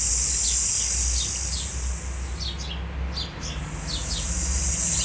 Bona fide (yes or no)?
yes